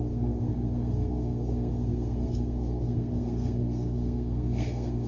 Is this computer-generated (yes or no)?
yes